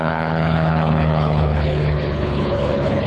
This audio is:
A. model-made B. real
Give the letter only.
A